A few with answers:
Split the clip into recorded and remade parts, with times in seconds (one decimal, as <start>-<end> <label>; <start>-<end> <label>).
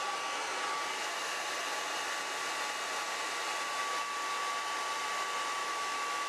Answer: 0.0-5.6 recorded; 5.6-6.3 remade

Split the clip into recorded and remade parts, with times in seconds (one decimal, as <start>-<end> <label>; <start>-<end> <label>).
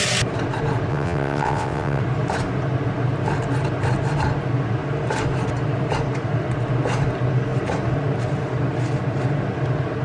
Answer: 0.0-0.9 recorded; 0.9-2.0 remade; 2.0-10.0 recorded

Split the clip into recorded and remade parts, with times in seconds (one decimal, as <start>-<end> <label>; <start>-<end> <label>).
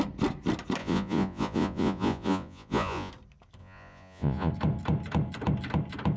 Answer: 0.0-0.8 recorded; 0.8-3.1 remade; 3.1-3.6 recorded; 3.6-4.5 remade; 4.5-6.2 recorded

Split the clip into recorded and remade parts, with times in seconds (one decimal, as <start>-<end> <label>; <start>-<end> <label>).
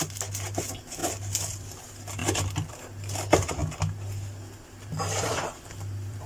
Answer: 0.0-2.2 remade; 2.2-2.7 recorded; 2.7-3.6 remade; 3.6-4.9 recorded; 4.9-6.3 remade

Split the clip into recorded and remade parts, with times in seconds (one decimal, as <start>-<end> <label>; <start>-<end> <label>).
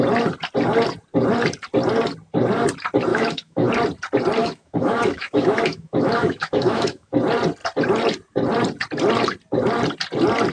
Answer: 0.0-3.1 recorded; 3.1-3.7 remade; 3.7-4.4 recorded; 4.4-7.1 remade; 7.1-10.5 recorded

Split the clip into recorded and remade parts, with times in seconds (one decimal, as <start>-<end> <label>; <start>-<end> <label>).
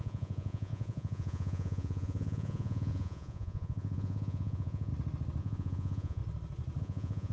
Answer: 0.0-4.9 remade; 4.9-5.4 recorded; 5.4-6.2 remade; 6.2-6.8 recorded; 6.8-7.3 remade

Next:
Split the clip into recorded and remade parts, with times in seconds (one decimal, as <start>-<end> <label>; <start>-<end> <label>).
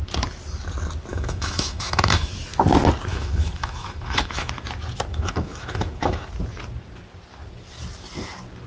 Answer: 0.0-1.1 recorded; 1.1-2.3 remade; 2.3-3.1 recorded; 3.1-4.5 remade; 4.5-5.1 recorded; 5.1-6.3 remade; 6.3-8.7 recorded